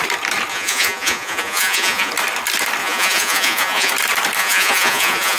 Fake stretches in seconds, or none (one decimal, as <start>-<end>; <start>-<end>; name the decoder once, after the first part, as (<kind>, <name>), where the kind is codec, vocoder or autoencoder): 0.5-2.1 (vocoder, Vocos); 2.8-3.9; 4.4-5.4